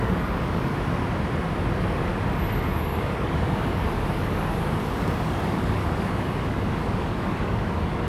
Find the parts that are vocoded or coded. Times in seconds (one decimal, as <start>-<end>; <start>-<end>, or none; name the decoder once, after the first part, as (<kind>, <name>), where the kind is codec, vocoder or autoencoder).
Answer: 0.0-0.7 (codec, DAC); 1.7-2.1; 2.7-8.1